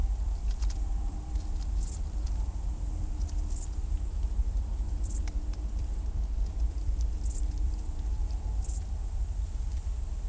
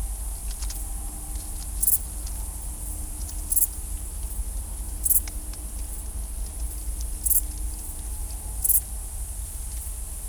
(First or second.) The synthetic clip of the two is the first